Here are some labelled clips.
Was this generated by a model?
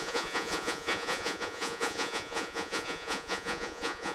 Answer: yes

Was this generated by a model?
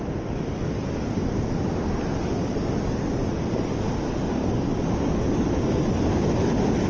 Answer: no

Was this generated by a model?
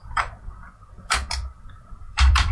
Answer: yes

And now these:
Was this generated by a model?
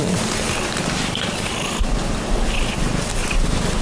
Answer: no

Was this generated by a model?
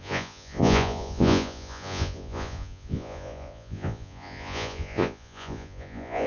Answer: yes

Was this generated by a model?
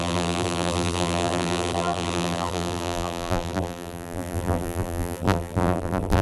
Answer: yes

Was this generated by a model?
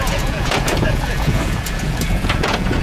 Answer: yes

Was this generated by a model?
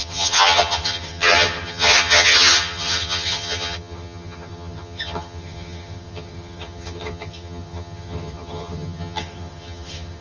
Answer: yes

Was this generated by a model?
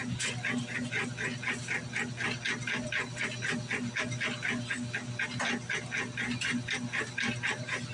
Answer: no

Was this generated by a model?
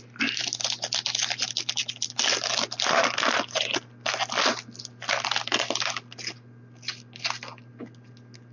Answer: no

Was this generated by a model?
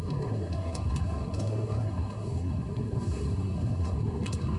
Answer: yes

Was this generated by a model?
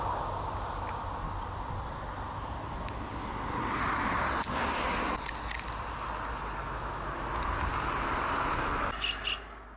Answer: no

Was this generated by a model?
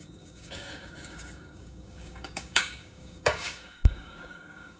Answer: yes